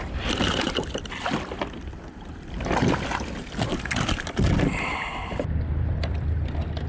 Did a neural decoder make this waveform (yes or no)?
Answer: yes